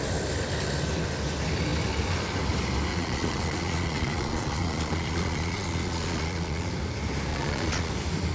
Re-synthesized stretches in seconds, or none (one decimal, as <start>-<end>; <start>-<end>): 2.9-6.7; 7.3-7.9